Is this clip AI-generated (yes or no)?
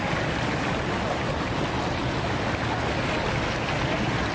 no